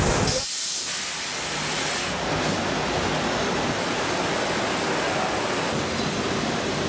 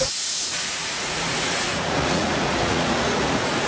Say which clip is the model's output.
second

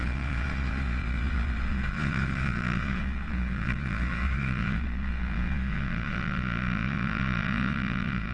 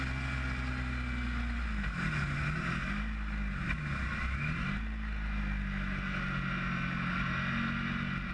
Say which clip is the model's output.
first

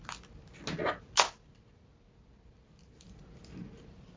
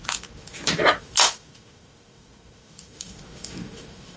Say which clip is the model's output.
second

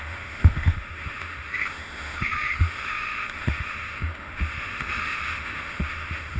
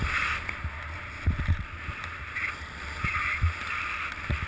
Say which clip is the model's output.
first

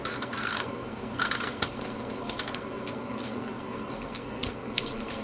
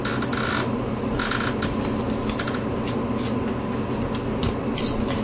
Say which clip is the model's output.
first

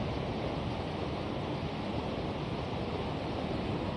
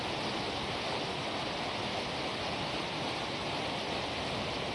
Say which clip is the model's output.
second